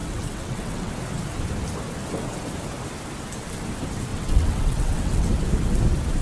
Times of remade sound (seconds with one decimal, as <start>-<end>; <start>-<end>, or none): 0.0-0.9; 4.1-5.3